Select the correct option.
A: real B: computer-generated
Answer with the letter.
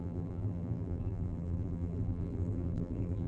B